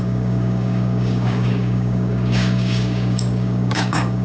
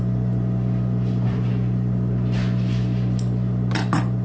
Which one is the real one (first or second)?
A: second